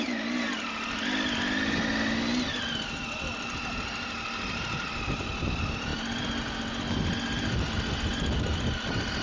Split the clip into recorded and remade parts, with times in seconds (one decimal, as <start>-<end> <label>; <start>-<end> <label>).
0.0-9.2 recorded